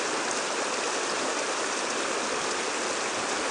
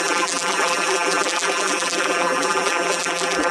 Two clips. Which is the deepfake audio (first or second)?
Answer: second